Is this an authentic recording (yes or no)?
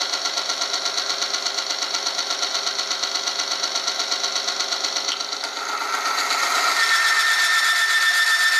yes